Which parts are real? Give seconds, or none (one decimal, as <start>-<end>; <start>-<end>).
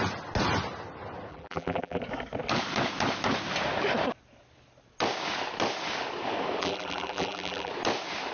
0.0-1.3; 2.0-6.6; 7.7-8.3